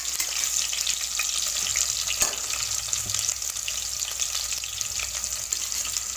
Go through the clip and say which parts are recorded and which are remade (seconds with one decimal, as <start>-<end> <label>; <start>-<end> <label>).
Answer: 0.0-6.2 recorded